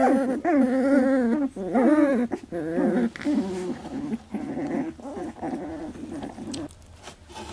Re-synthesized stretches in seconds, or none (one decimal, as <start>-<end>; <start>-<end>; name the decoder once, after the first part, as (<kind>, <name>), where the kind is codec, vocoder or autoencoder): none